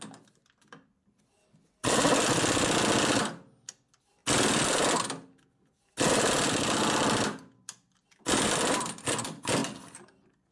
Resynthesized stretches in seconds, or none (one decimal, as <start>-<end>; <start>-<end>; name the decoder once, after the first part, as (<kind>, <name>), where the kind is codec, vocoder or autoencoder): none